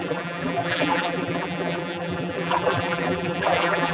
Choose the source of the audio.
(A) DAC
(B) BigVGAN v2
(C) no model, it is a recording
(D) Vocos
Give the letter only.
B